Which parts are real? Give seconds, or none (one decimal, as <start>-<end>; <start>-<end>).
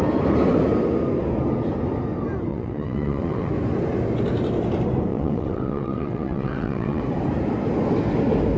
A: 0.0-2.5; 3.5-5.1; 7.0-8.6